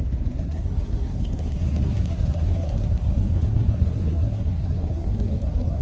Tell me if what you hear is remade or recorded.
remade